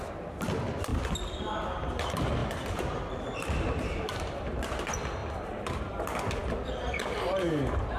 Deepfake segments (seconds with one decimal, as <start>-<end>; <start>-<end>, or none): 2.4-4.6; 5.2-5.8; 6.4-7.0